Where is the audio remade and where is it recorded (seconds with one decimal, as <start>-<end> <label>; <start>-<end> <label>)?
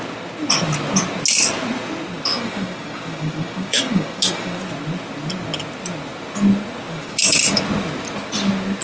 0.0-2.3 recorded; 2.3-4.6 remade; 4.6-6.9 recorded; 6.9-7.6 remade; 7.6-8.8 recorded